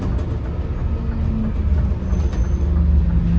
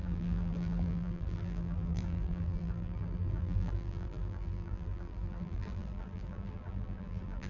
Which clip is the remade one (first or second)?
second